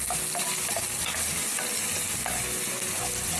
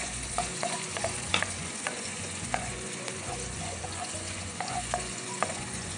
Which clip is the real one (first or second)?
first